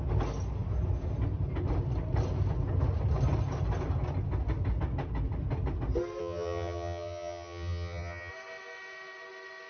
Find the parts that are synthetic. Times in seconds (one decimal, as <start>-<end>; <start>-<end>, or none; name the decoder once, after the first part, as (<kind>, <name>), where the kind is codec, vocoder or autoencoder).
6.2-8.3 (vocoder, HiFi-GAN)